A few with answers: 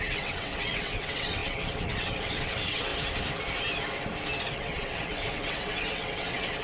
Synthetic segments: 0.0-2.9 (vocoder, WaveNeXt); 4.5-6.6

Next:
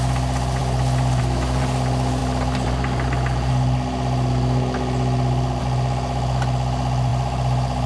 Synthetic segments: none

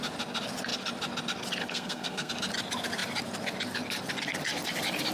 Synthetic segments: 1.6-2.3 (codec, SNAC)